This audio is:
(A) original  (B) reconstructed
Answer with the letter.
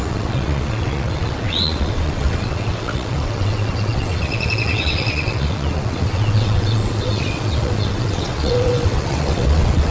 B